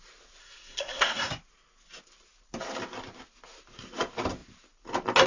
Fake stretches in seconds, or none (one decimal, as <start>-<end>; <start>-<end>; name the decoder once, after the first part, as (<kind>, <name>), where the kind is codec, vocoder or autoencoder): 0.4-1.3 (codec, SNAC)